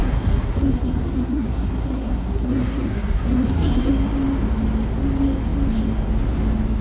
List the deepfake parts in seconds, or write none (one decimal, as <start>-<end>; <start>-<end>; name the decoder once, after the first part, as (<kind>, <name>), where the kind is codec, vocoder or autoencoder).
0.0-3.9 (codec, SNAC)